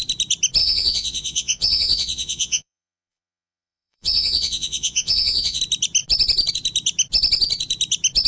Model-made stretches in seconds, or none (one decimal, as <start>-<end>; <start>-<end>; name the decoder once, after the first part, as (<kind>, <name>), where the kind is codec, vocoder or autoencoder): 0.6-5.6 (vocoder, Vocos)

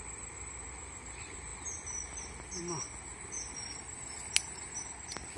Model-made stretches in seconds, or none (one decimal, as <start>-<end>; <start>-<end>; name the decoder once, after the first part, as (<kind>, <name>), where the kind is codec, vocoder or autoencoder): none